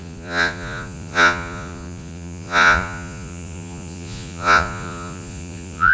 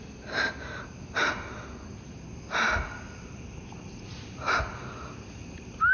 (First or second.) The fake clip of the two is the first